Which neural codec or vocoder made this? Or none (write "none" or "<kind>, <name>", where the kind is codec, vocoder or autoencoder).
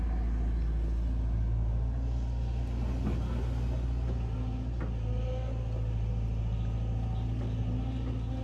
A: none